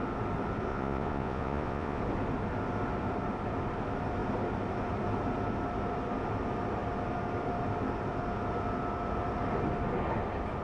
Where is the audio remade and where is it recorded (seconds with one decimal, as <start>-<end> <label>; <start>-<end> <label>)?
0.0-0.7 recorded; 0.7-2.0 remade; 2.0-10.6 recorded

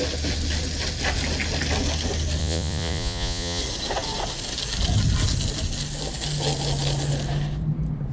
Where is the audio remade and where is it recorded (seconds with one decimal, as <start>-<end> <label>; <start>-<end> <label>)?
0.0-2.4 recorded; 2.4-3.6 remade; 3.6-8.1 recorded

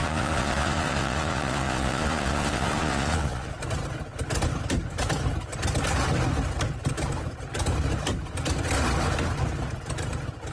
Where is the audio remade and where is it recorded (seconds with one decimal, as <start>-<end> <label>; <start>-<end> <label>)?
0.0-3.5 remade; 3.5-10.5 recorded

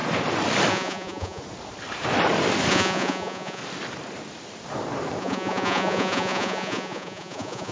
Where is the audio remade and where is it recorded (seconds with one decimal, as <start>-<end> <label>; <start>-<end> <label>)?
0.0-0.7 recorded; 0.7-1.4 remade; 1.4-2.7 recorded; 2.7-3.6 remade; 3.6-5.2 recorded; 5.2-7.7 remade

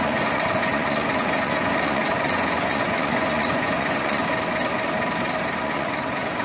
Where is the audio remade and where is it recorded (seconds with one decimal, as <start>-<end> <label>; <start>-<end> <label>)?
0.0-4.2 remade; 4.2-5.6 recorded; 5.6-6.4 remade

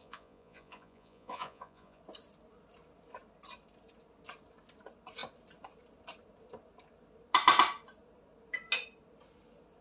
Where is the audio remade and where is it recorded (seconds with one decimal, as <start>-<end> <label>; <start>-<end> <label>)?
0.0-2.0 remade; 2.0-9.8 recorded

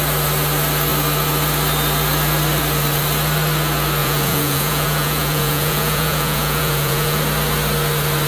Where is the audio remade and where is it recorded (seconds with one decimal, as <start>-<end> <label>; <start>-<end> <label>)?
0.0-4.0 recorded; 4.0-7.2 remade; 7.2-8.3 recorded

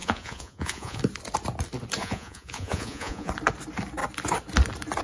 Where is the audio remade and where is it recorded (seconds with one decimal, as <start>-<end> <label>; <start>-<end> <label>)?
0.0-1.0 remade; 1.0-2.0 recorded; 2.0-3.3 remade; 3.3-5.0 recorded